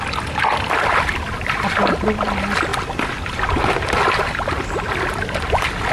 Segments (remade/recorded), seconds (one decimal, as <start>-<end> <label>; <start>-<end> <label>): 0.0-5.9 recorded

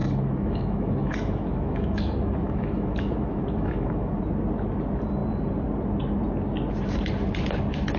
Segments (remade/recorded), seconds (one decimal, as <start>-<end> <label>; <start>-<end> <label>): 0.0-4.2 remade; 4.2-8.0 recorded

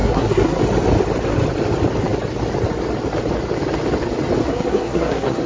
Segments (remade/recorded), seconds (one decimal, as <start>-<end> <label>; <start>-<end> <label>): 0.0-0.6 remade; 0.6-4.4 recorded; 4.4-5.5 remade

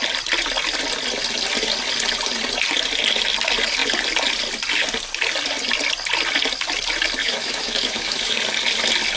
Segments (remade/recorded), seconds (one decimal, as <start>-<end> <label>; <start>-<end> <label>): 0.0-7.2 recorded; 7.2-8.4 remade; 8.4-9.2 recorded

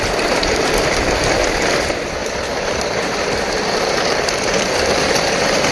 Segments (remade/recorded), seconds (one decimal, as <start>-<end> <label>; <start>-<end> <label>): 0.0-2.2 recorded; 2.2-5.7 remade

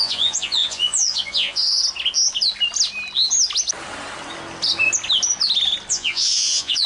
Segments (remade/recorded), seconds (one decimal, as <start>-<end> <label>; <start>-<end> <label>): 0.0-1.8 remade; 1.8-5.9 recorded; 5.9-6.9 remade

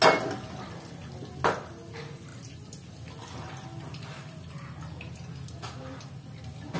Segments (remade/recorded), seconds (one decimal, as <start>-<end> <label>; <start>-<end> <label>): 0.0-6.8 recorded

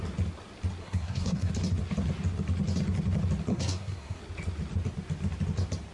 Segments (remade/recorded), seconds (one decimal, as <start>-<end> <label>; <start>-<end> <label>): 0.0-0.8 recorded; 0.8-1.5 remade; 1.5-3.5 recorded; 3.5-4.2 remade; 4.2-5.9 recorded